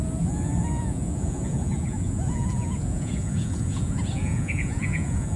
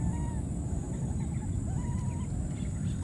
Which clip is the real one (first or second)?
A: second